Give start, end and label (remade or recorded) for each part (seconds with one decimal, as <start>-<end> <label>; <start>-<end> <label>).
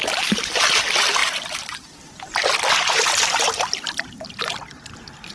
0.0-5.3 recorded